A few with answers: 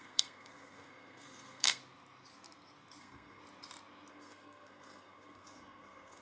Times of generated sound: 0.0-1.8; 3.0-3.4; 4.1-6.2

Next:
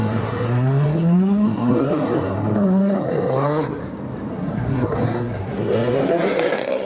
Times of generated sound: 0.0-3.8; 4.3-6.9

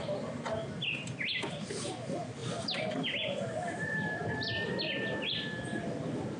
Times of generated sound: none

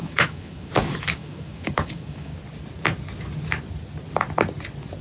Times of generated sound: 0.0-2.3

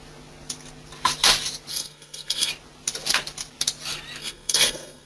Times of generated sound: 1.7-2.5; 4.2-5.1